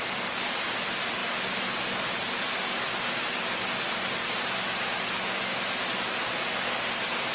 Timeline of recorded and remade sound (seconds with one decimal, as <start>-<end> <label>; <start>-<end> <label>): 0.0-7.3 recorded